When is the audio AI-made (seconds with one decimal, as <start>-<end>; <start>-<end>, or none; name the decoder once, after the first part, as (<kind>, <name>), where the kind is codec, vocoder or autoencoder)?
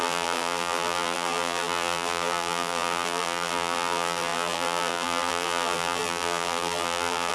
0.0-7.3 (vocoder, BigVGAN v2)